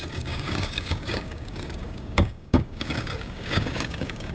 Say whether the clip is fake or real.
fake